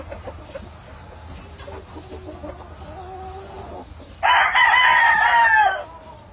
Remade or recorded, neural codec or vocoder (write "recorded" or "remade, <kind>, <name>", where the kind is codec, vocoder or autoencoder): recorded